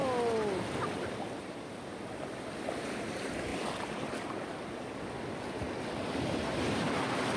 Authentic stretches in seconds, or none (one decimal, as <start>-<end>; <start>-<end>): 0.0-7.4